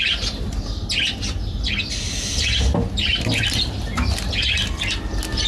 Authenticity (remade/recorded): recorded